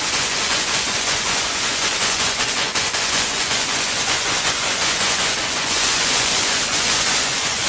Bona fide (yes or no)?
no